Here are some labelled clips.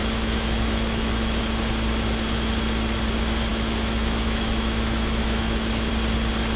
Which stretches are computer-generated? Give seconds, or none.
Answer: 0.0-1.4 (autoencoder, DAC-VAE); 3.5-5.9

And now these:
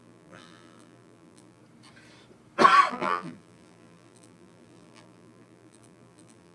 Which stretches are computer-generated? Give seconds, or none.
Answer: 0.0-1.6 (vocoder, BigVGAN v2); 2.9-6.5

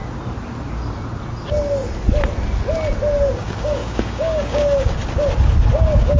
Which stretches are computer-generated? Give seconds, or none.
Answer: 3.3-5.0 (codec, DAC); 5.7-6.2

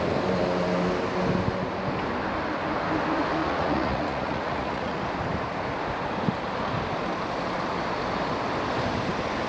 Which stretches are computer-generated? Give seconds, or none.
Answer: 3.4-5.0 (vocoder, Vocos)

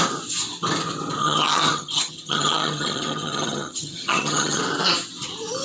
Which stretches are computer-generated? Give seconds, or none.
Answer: 1.2-4.6 (vocoder, HiFi-GAN)